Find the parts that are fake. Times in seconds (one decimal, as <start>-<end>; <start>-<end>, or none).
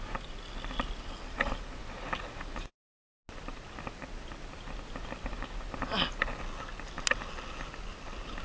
none